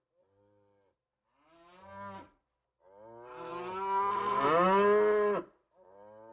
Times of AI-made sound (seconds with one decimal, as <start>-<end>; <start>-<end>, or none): none